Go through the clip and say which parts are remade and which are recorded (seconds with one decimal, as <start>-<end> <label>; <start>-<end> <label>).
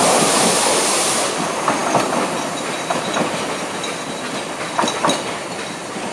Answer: 0.0-1.8 remade; 1.8-4.6 recorded; 4.6-6.1 remade